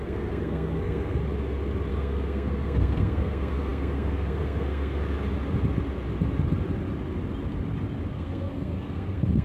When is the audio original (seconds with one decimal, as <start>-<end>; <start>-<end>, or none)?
1.2-1.9; 5.0-8.1